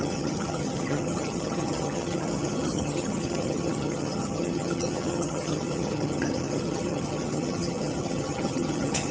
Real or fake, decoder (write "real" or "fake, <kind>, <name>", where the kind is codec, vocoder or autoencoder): fake, vocoder, HiFi-GAN